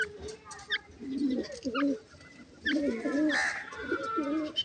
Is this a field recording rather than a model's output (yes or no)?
yes